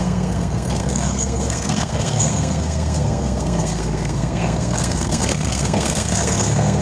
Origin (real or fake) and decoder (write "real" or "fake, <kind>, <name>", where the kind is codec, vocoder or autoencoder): fake, codec, SNAC